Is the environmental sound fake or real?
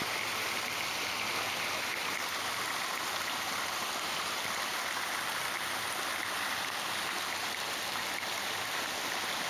real